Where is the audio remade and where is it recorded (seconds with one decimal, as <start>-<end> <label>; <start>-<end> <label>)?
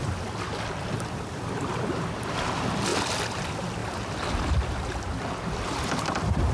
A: 0.0-6.5 remade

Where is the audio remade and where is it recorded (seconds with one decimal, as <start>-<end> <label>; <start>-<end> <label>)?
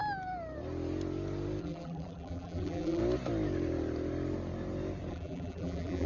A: 0.0-1.6 recorded; 1.6-3.0 remade; 3.0-5.1 recorded; 5.1-6.1 remade